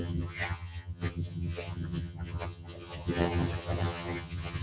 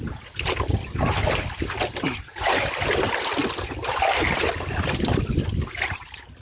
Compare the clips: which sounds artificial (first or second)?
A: first